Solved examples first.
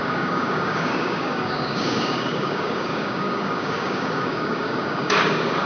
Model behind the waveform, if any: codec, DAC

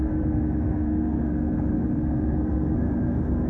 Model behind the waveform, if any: codec, SNAC